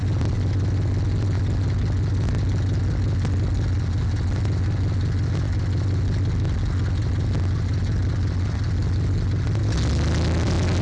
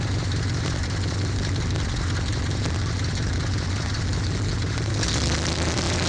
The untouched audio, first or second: first